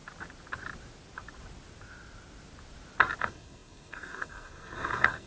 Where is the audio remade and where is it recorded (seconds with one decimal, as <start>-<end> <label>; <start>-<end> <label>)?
0.0-3.2 recorded; 3.2-5.3 remade